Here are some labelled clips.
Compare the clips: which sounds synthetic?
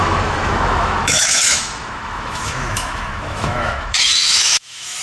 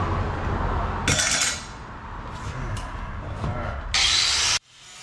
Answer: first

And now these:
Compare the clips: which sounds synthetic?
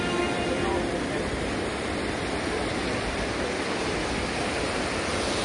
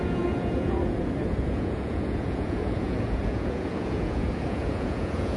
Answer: second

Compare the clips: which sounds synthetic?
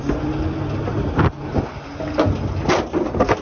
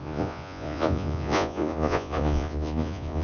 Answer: second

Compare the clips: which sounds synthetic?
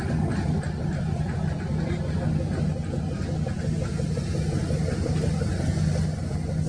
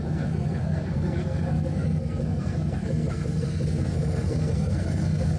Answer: second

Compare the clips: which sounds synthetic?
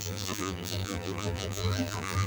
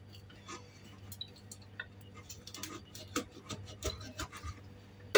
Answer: first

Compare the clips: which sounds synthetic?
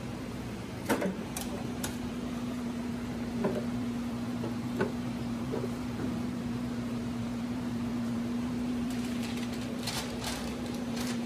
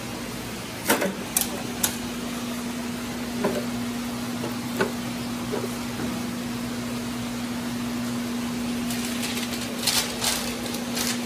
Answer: first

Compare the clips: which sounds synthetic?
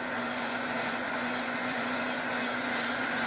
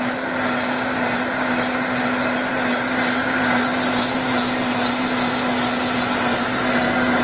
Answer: first